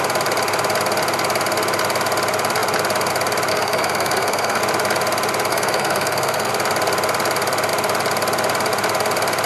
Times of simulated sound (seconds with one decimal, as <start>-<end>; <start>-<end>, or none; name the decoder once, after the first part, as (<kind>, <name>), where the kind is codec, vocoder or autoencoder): 3.5-4.6 (codec, SNAC); 5.5-6.5